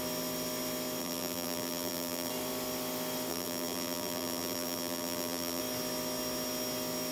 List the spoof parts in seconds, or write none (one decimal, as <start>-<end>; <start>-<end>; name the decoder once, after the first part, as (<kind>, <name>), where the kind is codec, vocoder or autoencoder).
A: 1.0-2.3 (vocoder, BigVGAN v2); 3.3-5.6